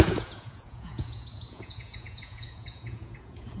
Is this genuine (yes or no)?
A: no